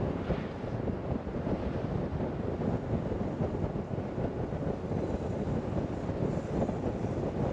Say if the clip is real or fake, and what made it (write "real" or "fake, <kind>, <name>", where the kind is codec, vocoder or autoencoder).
real